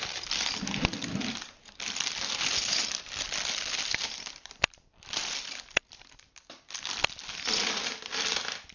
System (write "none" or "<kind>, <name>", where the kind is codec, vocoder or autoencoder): vocoder, BigVGAN v2